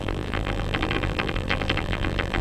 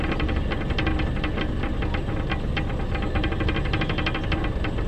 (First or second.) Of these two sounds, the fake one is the first